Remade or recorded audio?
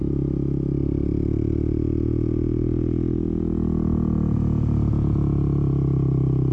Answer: recorded